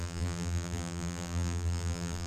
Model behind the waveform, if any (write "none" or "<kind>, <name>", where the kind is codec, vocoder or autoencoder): vocoder, BigVGAN v2